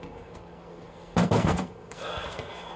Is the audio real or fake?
fake